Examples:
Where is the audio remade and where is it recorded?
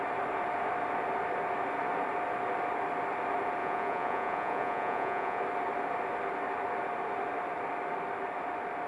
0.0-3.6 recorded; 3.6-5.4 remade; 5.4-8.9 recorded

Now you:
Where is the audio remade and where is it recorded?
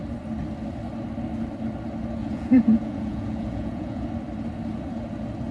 0.0-2.2 recorded; 2.2-4.1 remade; 4.1-5.5 recorded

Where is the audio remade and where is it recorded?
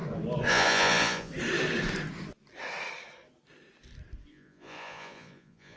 0.0-0.5 recorded; 0.5-1.3 remade; 1.3-4.3 recorded; 4.3-5.8 remade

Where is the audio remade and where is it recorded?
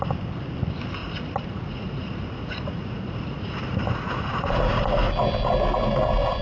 0.0-1.0 recorded; 1.0-4.8 remade; 4.8-6.4 recorded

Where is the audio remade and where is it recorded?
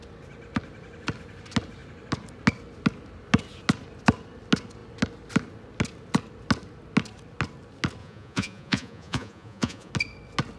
0.0-8.0 recorded; 8.0-9.9 remade; 9.9-10.6 recorded